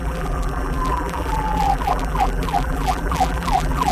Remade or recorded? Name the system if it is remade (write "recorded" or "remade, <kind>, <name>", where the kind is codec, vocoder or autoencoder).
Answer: remade, vocoder, BigVGAN v2